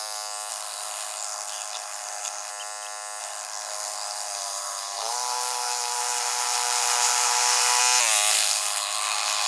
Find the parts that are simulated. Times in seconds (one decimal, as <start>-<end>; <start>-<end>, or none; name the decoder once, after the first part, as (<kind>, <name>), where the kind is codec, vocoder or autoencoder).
0.5-2.5 (codec, SNAC); 3.2-7.8; 8.3-9.5